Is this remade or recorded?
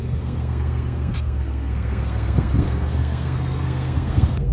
remade